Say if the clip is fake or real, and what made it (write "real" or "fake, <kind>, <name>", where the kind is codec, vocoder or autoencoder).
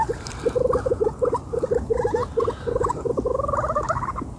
real